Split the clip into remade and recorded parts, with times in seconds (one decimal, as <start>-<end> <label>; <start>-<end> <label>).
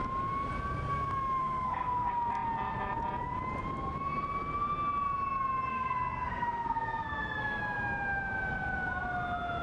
0.0-1.4 recorded; 1.4-2.1 remade; 2.1-5.7 recorded; 5.7-7.6 remade; 7.6-9.6 recorded